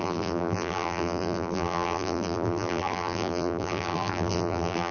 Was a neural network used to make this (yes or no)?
yes